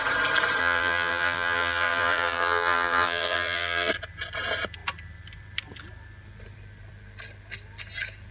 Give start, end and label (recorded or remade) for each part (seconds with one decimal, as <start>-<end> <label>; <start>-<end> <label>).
0.0-0.6 recorded; 0.6-3.9 remade; 3.9-8.3 recorded